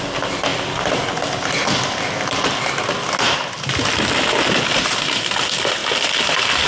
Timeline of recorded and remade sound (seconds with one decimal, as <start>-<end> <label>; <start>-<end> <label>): 0.0-6.7 recorded